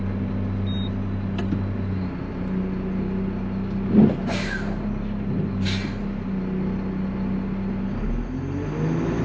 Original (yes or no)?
yes